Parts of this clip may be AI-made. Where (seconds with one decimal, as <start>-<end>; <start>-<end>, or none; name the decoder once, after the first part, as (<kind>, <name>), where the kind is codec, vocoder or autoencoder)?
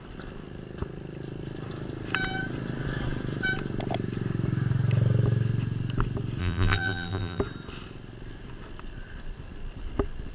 6.4-7.4 (vocoder, BigVGAN v2)